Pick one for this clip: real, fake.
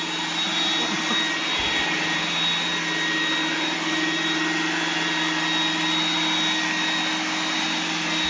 real